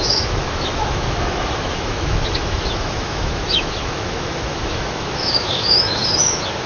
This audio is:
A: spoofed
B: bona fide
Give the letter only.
A